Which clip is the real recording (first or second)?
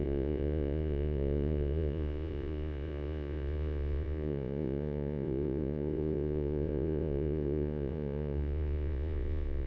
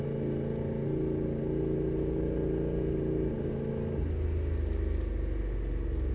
second